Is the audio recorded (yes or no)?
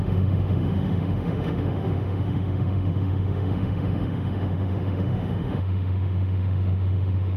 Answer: no